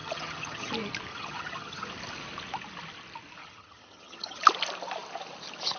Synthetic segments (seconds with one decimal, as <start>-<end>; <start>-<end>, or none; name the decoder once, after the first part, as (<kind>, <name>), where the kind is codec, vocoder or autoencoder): 0.0-0.7 (vocoder, HiFi-GAN); 1.1-1.9; 3.4-4.4